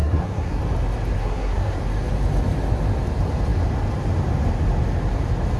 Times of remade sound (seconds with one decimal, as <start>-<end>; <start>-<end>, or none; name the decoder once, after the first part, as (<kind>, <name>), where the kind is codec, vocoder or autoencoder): 0.0-0.6 (codec, SNAC); 1.2-1.8